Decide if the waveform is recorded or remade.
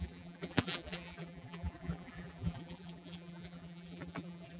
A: remade